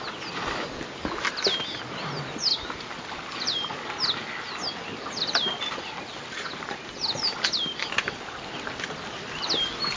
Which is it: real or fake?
real